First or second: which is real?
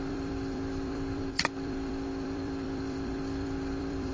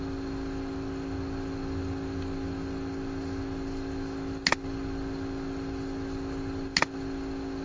second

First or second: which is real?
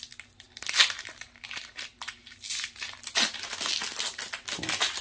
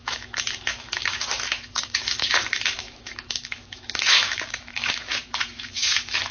first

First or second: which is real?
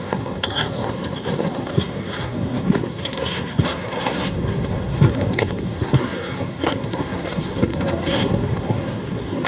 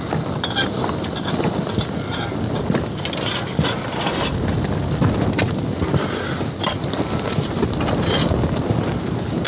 second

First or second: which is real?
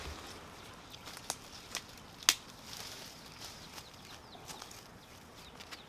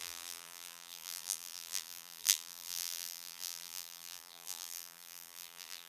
first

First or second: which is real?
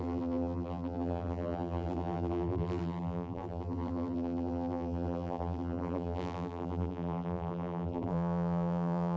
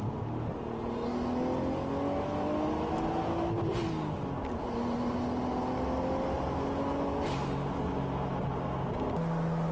second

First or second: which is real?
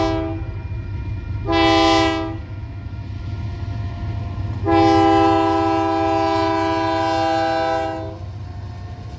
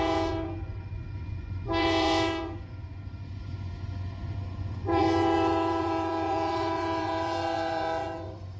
first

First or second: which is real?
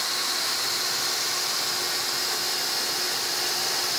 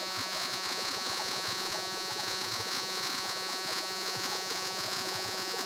first